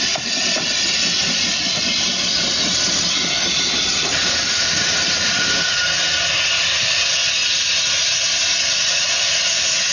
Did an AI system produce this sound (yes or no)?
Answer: no